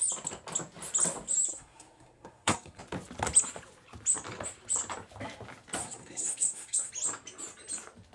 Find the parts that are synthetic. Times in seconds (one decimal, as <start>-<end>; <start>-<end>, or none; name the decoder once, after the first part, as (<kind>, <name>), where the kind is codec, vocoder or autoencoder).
1.5-2.8 (codec, SNAC); 5.8-6.9